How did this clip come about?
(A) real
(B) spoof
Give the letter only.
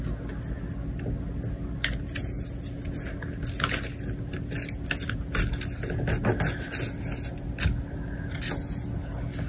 A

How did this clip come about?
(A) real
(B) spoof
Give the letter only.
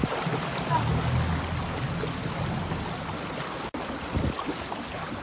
A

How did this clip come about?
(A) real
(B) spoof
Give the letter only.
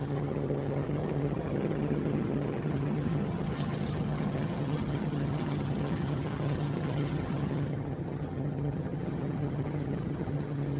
B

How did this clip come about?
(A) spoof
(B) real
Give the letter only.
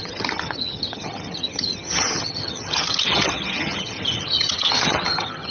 A